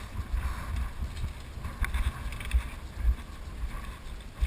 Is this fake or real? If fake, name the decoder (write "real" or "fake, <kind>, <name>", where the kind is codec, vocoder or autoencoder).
real